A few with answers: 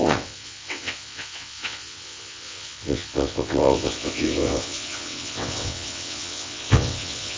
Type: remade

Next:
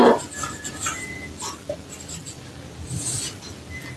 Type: remade